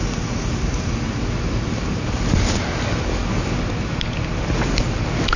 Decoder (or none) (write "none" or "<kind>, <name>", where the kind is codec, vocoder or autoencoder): none